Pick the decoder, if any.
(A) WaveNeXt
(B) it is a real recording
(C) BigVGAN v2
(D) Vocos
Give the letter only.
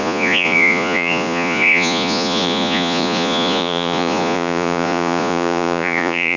D